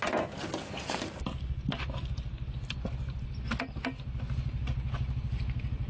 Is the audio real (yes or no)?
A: yes